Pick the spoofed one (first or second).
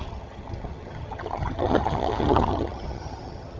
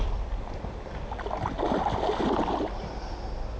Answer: first